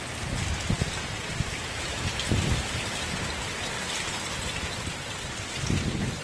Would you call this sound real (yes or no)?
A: yes